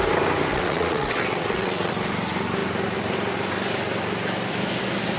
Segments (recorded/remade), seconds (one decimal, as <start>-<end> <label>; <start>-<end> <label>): 0.0-0.5 recorded; 0.5-1.9 remade; 1.9-5.2 recorded